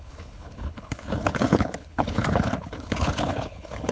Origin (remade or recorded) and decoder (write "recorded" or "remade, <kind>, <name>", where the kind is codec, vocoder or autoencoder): remade, codec, HILCodec